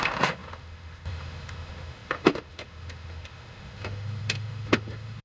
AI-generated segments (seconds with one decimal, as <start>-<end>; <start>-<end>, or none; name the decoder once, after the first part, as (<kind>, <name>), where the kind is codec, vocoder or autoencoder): 0.0-5.2 (autoencoder, DAC-VAE)